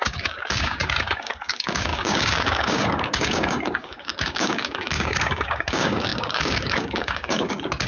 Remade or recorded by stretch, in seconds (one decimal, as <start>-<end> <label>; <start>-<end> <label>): 0.0-7.9 remade